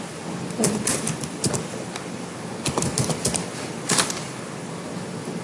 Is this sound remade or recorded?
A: recorded